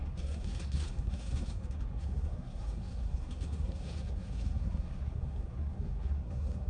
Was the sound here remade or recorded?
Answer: remade